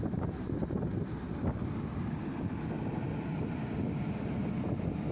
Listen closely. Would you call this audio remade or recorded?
recorded